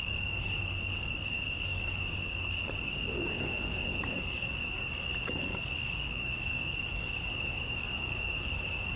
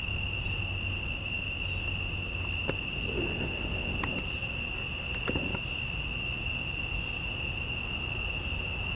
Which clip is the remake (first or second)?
first